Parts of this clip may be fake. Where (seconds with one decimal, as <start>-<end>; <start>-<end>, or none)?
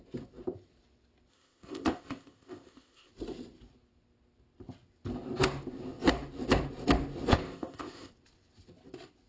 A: 1.3-3.1; 7.3-8.1